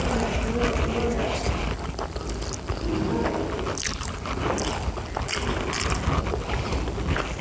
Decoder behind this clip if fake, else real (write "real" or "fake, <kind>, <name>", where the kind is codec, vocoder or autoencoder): fake, vocoder, BigVGAN v2